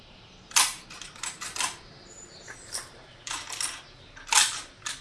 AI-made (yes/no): yes